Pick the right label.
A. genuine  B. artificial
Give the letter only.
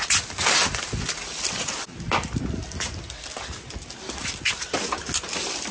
A